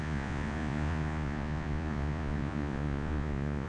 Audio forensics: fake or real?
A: fake